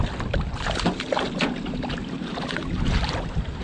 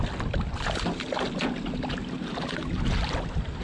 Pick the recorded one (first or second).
second